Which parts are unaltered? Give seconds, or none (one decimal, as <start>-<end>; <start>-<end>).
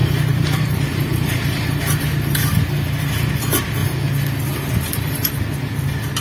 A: 2.5-3.8; 5.4-6.2